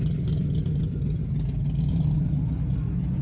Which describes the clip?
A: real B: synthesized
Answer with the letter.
A